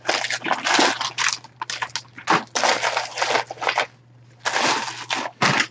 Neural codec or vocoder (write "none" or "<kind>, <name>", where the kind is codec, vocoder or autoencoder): none